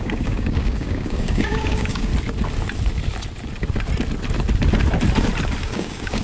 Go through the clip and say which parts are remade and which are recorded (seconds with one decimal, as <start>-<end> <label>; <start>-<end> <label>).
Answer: 0.0-2.1 remade; 2.1-5.6 recorded; 5.6-6.2 remade